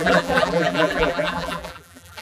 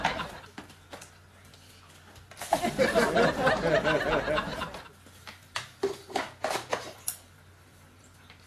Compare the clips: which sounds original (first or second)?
second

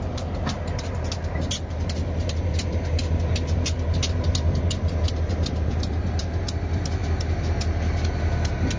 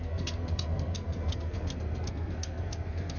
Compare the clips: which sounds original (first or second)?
first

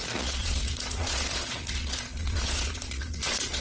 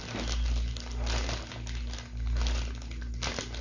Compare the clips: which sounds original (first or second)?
second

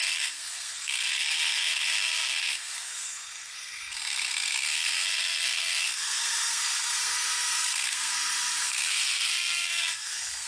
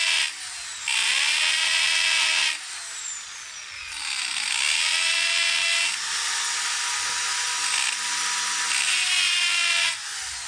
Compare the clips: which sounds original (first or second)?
second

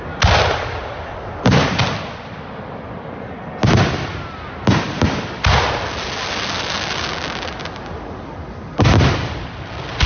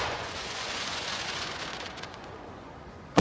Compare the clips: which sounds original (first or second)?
first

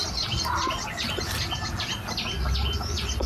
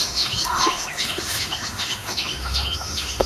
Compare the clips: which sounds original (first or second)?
first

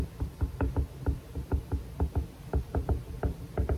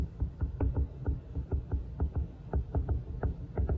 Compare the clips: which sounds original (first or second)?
first